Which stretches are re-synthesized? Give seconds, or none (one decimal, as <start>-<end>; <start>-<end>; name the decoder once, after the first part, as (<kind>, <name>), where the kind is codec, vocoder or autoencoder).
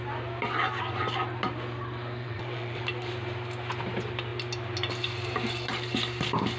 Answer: 2.2-2.8 (vocoder, WaveNeXt)